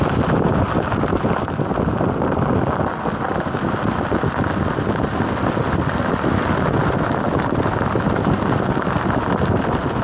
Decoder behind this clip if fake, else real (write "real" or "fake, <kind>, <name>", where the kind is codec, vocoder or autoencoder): real